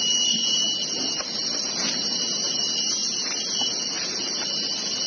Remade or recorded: recorded